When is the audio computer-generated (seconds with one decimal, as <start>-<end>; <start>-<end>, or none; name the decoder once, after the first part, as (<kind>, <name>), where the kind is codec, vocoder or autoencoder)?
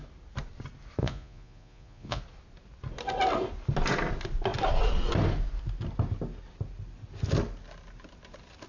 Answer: 1.0-2.2 (vocoder, Vocos)